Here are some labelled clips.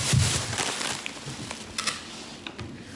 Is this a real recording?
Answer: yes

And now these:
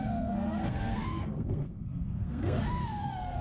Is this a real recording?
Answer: no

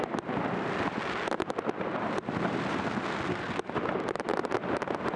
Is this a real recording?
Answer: yes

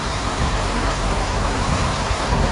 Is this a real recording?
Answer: no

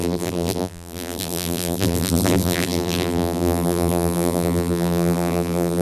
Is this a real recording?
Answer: no